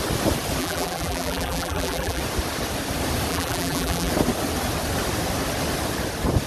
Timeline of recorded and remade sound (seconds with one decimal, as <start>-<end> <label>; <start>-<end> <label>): 0.0-0.6 recorded; 0.6-2.2 remade; 2.2-3.3 recorded; 3.3-4.1 remade; 4.1-6.5 recorded

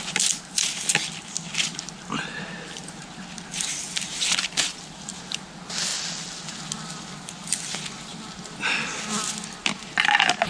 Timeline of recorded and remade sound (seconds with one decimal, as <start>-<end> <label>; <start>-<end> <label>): 0.0-10.5 recorded